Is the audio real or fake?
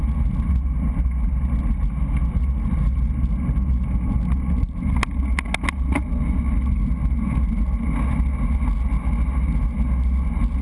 real